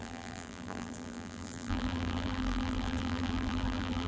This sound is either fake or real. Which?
fake